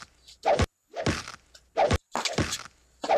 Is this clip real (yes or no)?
yes